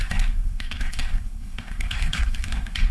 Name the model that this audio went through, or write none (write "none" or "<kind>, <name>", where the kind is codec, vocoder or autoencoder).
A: codec, SNAC